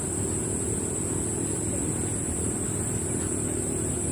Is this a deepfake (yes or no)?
no